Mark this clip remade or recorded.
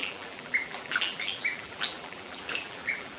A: remade